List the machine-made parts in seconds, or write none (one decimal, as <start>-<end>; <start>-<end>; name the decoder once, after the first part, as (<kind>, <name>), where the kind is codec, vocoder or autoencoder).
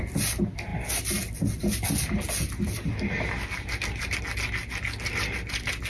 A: none